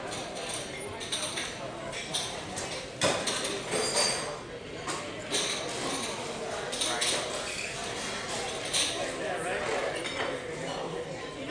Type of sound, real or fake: real